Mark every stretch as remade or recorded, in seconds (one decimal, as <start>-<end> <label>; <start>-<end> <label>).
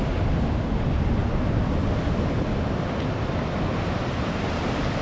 0.0-5.0 recorded